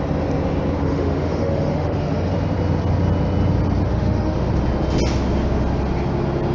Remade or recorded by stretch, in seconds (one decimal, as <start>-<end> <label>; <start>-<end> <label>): 0.0-0.8 recorded; 0.8-2.3 remade; 2.3-3.9 recorded; 3.9-4.5 remade; 4.5-6.5 recorded